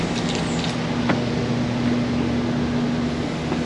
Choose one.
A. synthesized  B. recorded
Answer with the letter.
B